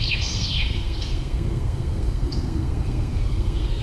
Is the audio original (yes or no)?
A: no